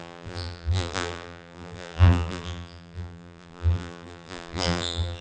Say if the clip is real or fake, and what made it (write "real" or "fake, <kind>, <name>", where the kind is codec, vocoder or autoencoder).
fake, vocoder, BigVGAN v2